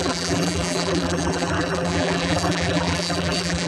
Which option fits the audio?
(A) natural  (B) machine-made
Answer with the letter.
B